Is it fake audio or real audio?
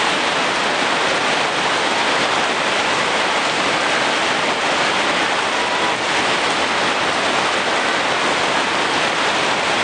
real